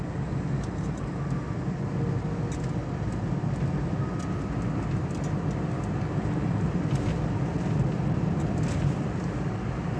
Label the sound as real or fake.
real